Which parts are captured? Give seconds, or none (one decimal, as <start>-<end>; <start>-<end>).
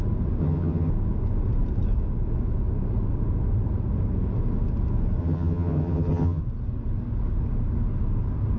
0.0-0.4; 0.9-5.2; 6.4-8.6